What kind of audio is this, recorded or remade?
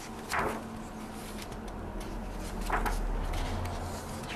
recorded